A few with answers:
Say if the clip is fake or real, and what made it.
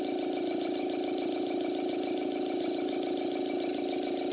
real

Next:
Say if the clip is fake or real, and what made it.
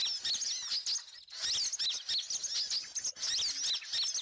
real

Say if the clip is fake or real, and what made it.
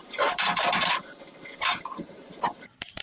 fake, vocoder, BigVGAN v2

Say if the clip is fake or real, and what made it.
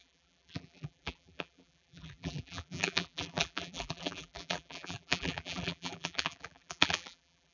fake, vocoder, BigVGAN v2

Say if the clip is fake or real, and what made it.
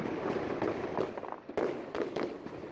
real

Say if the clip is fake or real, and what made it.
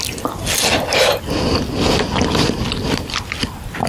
real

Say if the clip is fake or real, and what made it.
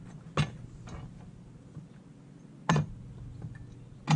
real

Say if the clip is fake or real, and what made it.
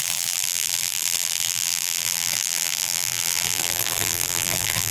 fake, vocoder, BigVGAN v2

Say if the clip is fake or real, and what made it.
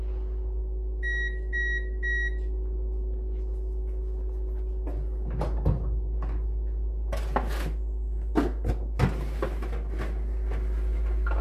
real